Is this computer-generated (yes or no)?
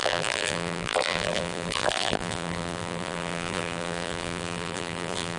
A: yes